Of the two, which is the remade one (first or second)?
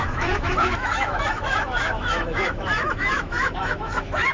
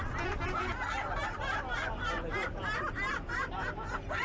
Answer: first